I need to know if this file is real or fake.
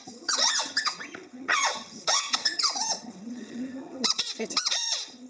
fake